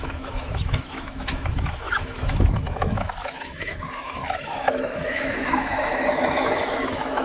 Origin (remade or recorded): remade